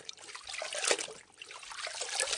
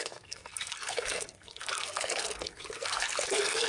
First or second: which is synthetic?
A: second